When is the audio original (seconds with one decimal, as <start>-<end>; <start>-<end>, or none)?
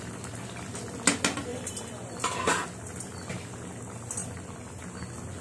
0.0-1.5; 2.7-5.4